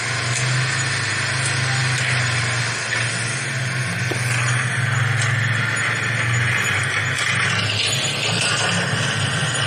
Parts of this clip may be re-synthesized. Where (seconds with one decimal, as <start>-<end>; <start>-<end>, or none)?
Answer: none